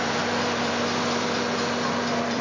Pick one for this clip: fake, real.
fake